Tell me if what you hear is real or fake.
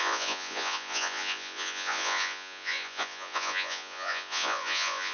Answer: fake